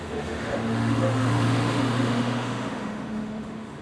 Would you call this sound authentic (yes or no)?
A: no